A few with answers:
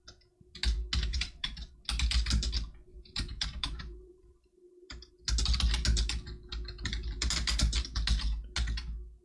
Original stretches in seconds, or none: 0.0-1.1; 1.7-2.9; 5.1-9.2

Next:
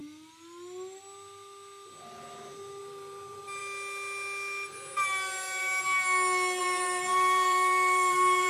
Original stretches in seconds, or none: 0.0-2.8; 3.6-6.6